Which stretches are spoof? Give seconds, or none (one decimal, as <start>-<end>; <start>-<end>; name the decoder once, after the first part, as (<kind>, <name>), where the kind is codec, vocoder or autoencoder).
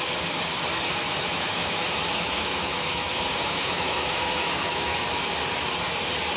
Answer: 1.2-5.0 (autoencoder, DAC-VAE)